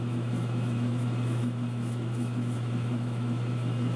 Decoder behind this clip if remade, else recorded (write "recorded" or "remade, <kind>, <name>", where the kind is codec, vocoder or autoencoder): remade, autoencoder, DAC-VAE